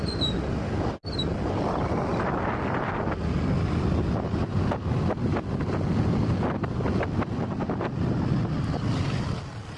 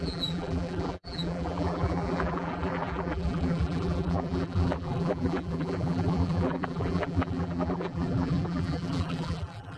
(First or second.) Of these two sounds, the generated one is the second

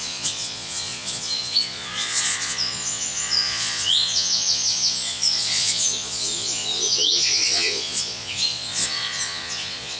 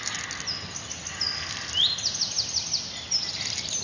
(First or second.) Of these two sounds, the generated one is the first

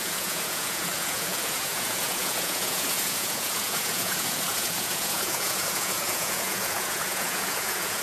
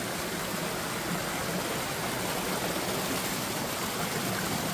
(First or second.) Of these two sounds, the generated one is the first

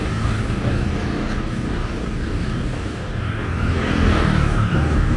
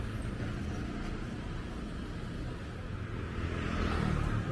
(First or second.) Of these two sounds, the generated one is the first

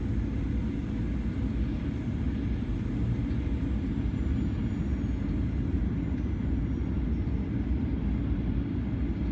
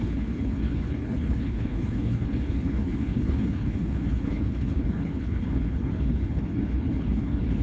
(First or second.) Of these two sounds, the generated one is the second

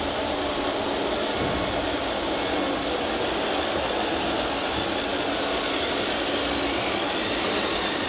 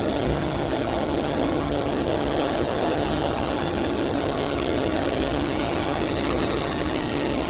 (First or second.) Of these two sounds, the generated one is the second